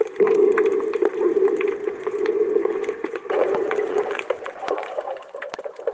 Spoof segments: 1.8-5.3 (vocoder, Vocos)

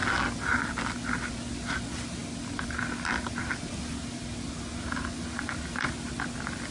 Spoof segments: none

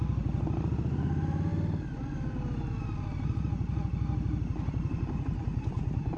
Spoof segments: none